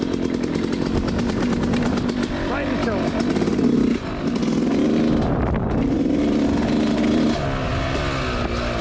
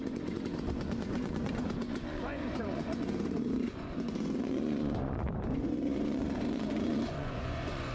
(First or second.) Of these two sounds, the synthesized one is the second